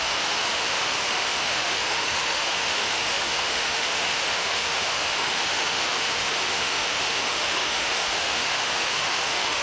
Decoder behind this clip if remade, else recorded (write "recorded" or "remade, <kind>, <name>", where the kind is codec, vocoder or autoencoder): remade, autoencoder, DAC-VAE